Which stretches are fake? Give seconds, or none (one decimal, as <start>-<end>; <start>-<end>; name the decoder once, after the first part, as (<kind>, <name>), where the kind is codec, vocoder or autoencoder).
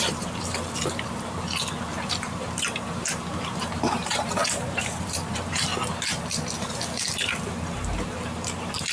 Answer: 0.0-5.7 (vocoder, BigVGAN v2); 7.3-8.9